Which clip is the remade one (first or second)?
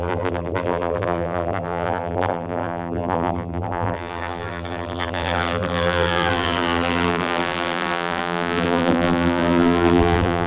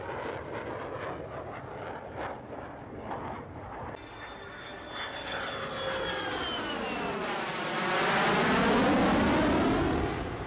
first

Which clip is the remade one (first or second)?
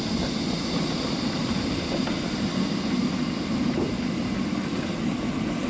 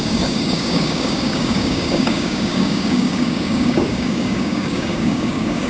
second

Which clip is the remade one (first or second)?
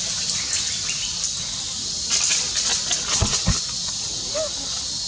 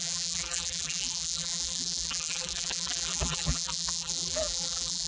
second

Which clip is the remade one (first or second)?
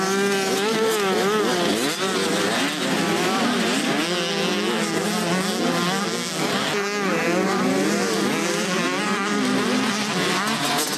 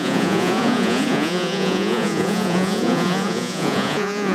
second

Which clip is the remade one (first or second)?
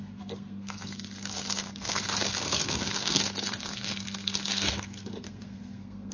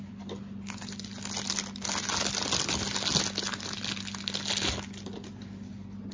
first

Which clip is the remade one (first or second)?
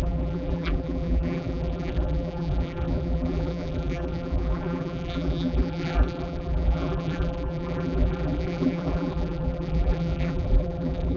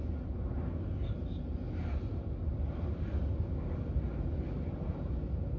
first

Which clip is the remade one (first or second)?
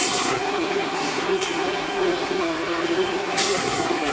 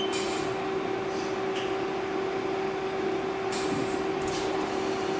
first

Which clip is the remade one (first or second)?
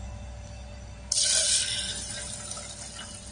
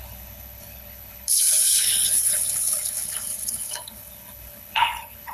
second